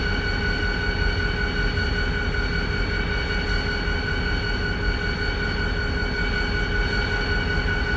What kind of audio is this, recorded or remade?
recorded